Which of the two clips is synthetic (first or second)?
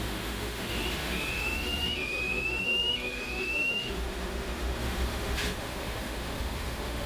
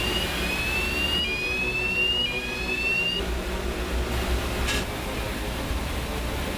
first